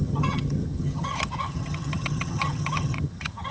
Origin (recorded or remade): remade